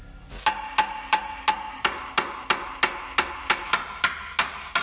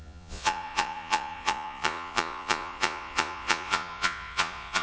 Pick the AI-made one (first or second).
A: second